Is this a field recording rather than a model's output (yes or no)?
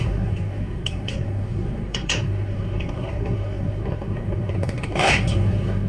no